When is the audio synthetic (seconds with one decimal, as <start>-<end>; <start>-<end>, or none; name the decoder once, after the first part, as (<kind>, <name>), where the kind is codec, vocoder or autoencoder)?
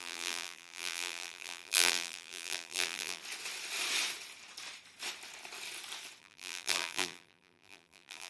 0.0-3.2 (vocoder, BigVGAN v2); 6.2-8.3